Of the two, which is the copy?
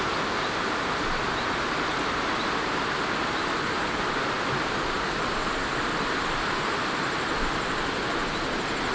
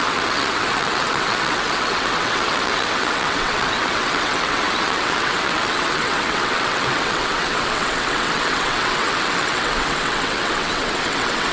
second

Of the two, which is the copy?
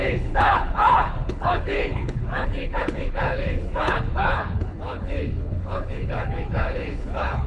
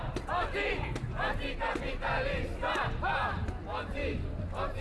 first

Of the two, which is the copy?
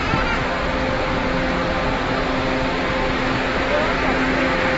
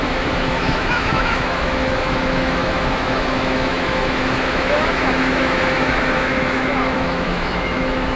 second